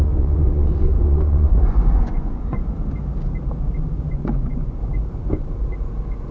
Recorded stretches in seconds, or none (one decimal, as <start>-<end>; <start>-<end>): 2.6-4.1; 4.8-6.3